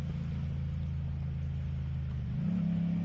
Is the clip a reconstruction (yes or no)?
no